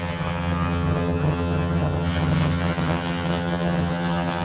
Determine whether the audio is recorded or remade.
remade